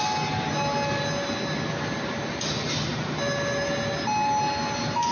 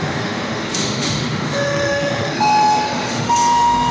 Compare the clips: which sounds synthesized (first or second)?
second